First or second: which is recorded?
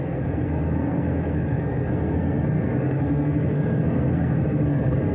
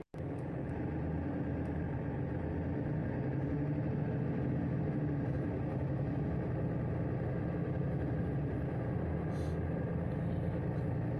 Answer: second